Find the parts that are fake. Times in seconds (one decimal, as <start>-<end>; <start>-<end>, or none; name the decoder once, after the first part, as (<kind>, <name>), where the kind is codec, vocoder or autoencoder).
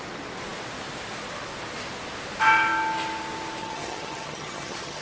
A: 3.6-5.0 (vocoder, HiFi-GAN)